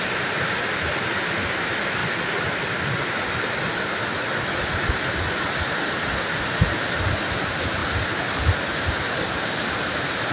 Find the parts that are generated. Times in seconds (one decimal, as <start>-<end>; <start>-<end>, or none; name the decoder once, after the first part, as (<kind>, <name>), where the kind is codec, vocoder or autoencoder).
0.0-2.0 (vocoder, BigVGAN v2); 6.6-7.8; 8.9-10.3